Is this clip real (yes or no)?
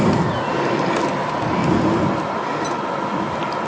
yes